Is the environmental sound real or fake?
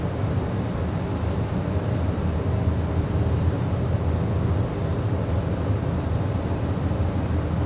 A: real